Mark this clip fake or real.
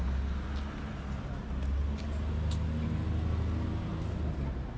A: real